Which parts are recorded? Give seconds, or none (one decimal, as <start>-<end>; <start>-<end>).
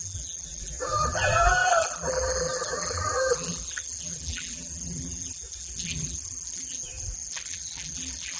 none